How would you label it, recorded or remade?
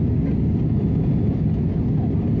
recorded